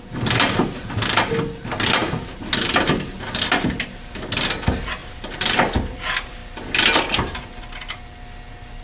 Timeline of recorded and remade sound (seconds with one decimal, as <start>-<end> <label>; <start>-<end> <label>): 0.0-5.0 recorded; 5.0-6.0 remade; 6.0-8.8 recorded